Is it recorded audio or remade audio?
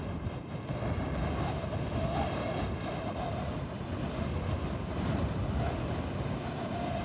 recorded